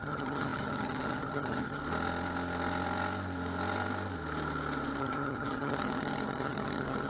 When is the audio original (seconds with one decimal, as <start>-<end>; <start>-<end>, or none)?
1.8-5.0